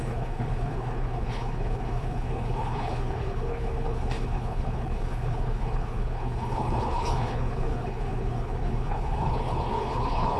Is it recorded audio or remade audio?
remade